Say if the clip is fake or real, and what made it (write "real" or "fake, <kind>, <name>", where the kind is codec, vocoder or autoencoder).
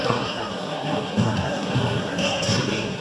fake, codec, SNAC